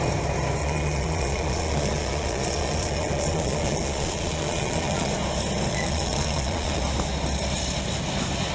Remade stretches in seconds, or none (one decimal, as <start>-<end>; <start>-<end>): 0.6-5.1; 5.7-6.8